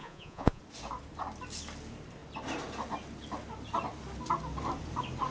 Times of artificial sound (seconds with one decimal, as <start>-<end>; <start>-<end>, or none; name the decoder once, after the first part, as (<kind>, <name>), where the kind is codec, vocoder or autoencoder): 0.0-0.6 (vocoder, Vocos)